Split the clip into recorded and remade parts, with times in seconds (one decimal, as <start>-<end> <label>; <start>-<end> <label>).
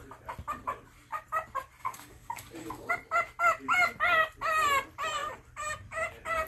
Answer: 0.0-1.8 recorded; 1.8-2.9 remade; 2.9-6.5 recorded